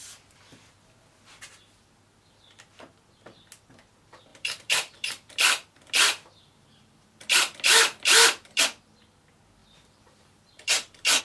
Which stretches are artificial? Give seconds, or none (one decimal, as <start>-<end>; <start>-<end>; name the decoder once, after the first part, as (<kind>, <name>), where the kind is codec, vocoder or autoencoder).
4.3-8.6 (vocoder, BigVGAN v2); 9.6-11.2

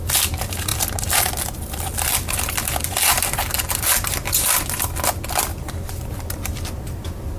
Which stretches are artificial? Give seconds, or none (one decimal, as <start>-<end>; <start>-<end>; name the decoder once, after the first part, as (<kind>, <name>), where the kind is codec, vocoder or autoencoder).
none

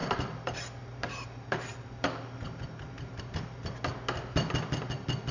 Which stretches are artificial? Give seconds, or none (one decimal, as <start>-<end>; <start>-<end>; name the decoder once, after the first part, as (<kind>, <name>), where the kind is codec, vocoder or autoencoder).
0.0-3.2 (vocoder, BigVGAN v2)